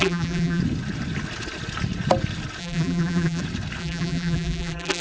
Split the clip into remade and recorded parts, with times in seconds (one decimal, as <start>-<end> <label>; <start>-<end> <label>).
0.0-0.6 remade; 0.6-2.6 recorded; 2.6-3.4 remade; 3.4-3.8 recorded; 3.8-5.0 remade